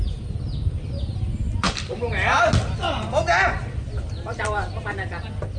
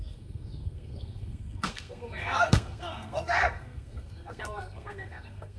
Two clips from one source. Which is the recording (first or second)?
first